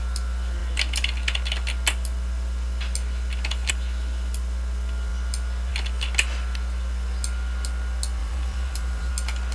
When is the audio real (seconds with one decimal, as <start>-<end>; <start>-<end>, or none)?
0.0-8.2; 9.1-9.5